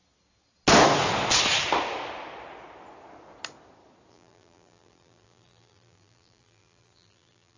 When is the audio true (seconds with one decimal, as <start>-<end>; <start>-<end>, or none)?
0.0-4.1